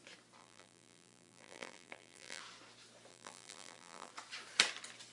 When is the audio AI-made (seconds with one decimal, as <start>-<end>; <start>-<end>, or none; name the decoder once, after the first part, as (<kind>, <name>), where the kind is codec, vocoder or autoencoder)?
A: 0.4-2.4 (vocoder, BigVGAN v2); 3.1-4.1